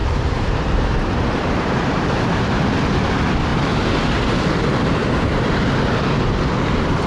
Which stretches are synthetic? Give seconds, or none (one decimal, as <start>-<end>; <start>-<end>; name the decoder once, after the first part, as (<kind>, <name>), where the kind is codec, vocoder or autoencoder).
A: 0.0-2.6 (vocoder, BigVGAN v2); 3.5-4.2; 5.0-5.6